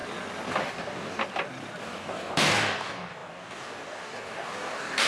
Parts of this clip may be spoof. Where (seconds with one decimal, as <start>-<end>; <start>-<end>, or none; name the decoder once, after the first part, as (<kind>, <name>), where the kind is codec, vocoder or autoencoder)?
0.6-1.2 (codec, DAC); 1.8-5.1